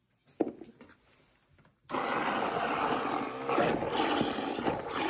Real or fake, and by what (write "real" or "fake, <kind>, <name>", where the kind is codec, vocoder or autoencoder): real